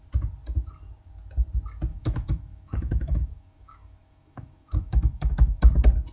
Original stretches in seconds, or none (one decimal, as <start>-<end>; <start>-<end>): 0.0-1.9; 5.6-6.1